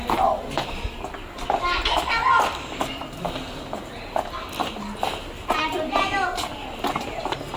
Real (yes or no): yes